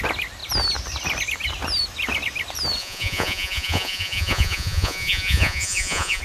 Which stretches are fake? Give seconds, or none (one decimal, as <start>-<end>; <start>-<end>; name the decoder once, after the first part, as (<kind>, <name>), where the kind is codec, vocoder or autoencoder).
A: 2.8-6.2 (vocoder, Vocos)